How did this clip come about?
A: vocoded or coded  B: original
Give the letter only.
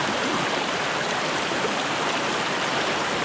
B